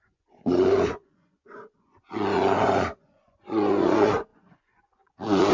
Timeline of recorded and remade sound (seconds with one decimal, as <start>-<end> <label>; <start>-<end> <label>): 0.0-5.5 remade